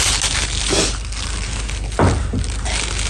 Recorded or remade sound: recorded